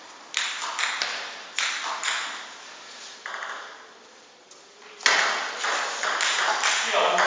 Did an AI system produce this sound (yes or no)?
no